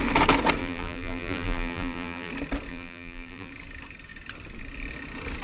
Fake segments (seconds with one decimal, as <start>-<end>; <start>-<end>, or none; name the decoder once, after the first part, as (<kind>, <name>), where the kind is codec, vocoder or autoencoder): 0.6-2.3 (vocoder, BigVGAN v2); 2.7-3.5